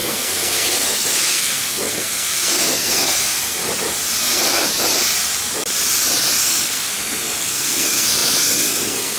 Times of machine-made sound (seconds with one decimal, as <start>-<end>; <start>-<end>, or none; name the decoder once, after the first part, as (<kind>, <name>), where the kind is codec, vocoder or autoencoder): 0.0-3.6 (codec, SNAC); 4.2-4.7; 6.4-9.2